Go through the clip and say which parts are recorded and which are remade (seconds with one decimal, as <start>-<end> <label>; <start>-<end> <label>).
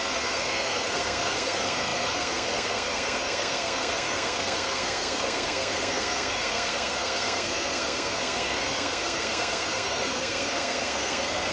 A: 0.0-11.5 remade